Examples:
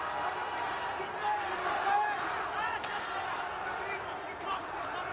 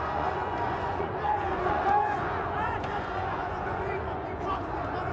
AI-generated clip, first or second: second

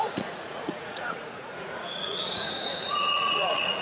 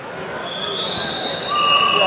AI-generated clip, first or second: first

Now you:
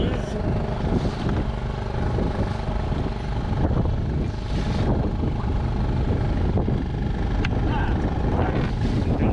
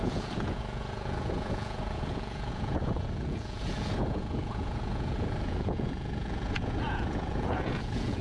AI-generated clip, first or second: second